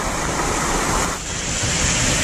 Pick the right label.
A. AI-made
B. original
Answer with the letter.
B